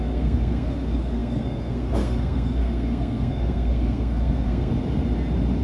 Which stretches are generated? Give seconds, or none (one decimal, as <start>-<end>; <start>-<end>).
0.0-4.7